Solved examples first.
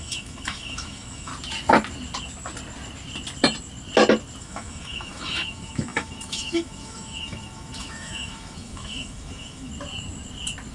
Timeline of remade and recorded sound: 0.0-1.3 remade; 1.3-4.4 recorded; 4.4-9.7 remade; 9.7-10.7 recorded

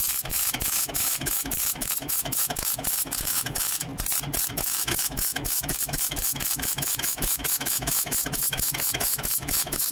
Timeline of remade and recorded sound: 0.0-3.9 remade; 3.9-4.5 recorded; 4.5-9.9 remade